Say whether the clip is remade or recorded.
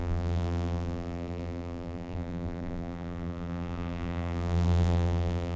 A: remade